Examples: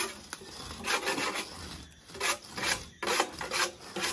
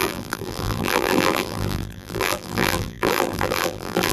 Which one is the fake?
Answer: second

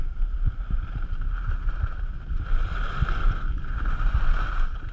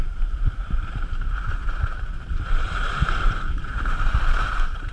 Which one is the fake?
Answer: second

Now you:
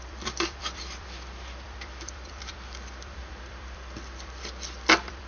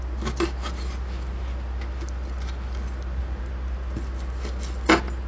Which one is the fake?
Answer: first